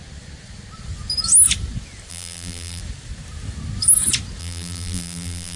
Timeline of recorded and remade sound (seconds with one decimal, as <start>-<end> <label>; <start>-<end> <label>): 0.0-2.1 recorded; 2.1-2.8 remade; 2.8-4.4 recorded; 4.4-5.6 remade